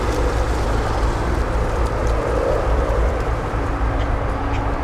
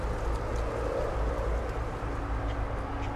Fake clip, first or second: first